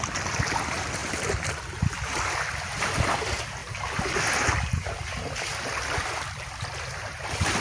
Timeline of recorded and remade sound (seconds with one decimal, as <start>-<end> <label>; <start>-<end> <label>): 0.0-7.6 recorded